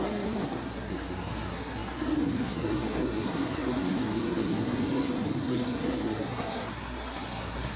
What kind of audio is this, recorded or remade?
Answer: remade